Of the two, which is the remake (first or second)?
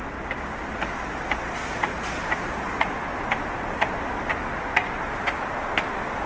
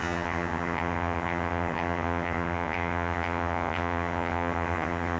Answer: second